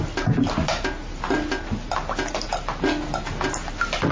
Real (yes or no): yes